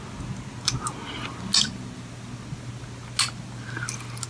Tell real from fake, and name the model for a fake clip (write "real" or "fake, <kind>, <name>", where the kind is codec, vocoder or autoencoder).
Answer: real